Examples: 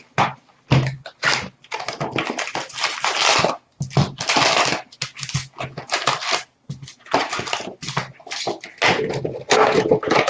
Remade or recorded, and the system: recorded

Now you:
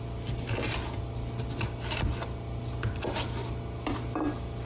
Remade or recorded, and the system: recorded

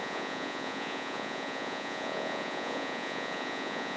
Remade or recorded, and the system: remade, vocoder, Vocos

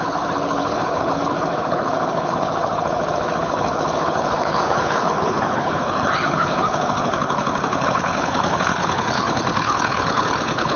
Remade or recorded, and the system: remade, codec, HILCodec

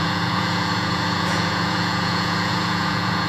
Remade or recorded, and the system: remade, vocoder, Vocos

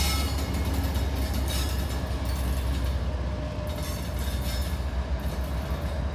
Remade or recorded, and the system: recorded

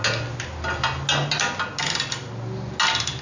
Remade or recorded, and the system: recorded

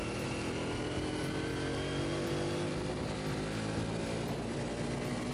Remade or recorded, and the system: recorded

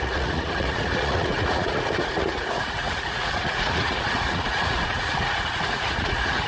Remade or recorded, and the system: remade, vocoder, Vocos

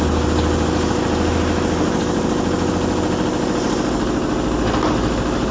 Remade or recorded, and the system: recorded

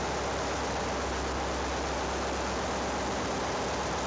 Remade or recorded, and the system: recorded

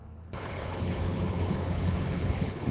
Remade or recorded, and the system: remade, codec, HILCodec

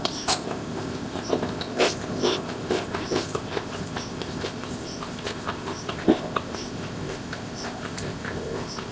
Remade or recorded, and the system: remade, codec, ZipCodec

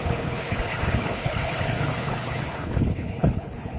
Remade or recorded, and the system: remade, codec, HILCodec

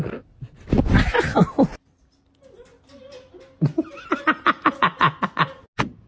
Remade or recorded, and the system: recorded